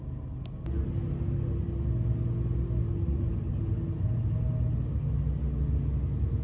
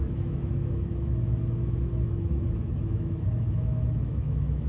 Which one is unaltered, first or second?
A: first